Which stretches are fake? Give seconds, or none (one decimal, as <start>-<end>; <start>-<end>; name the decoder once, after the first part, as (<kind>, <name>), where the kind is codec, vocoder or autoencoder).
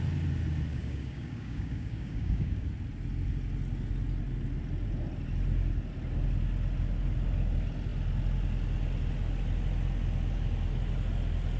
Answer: 0.7-2.7 (codec, DAC)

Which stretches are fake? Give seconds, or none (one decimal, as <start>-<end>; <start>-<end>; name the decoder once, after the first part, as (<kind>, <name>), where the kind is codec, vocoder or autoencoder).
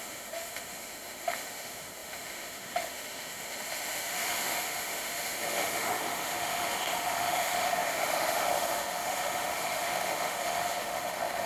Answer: 0.0-11.5 (autoencoder, DAC-VAE)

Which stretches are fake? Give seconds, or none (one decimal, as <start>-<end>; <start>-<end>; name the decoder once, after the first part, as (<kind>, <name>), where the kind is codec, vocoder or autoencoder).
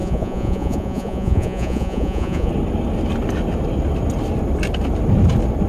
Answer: 0.0-2.5 (vocoder, Vocos)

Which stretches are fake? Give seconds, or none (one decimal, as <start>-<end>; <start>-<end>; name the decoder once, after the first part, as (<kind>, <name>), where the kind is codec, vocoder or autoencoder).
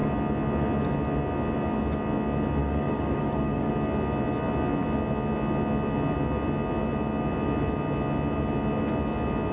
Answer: 2.6-3.7 (codec, DAC)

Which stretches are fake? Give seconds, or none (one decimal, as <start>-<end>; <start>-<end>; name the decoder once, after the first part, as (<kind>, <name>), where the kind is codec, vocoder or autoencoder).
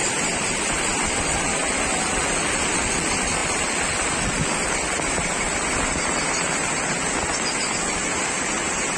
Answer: none